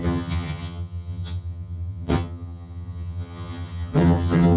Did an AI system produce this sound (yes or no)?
yes